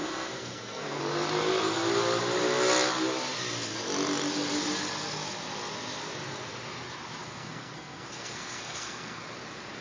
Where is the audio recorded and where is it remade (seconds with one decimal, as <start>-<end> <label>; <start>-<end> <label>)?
0.0-1.0 remade; 1.0-7.2 recorded; 7.2-9.2 remade; 9.2-9.8 recorded

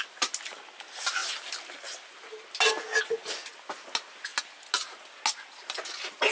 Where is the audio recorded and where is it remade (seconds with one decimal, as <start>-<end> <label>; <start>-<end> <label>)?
0.0-6.3 recorded

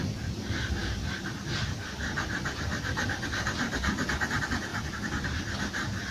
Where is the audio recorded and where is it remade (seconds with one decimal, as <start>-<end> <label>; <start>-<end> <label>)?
0.0-6.1 recorded

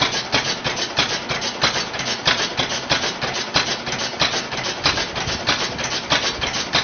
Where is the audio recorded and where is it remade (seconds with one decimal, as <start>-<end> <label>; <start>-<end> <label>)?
0.0-6.8 recorded

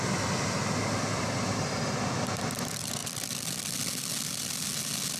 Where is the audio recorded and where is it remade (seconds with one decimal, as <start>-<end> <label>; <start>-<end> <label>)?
0.0-5.2 recorded

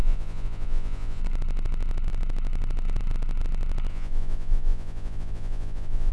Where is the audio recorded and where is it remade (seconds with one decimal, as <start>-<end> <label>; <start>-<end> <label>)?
0.0-1.2 remade; 1.2-3.9 recorded; 3.9-6.1 remade

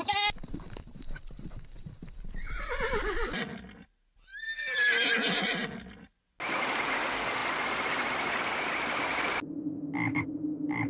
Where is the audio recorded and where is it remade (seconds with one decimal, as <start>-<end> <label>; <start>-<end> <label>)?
0.0-10.9 recorded

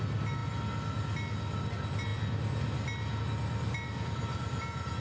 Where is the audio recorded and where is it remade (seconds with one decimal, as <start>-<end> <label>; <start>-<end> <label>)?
0.0-5.0 recorded